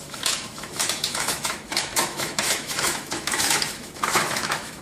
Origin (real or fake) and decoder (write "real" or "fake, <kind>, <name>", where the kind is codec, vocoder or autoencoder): fake, autoencoder, DAC-VAE